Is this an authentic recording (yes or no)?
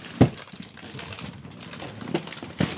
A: yes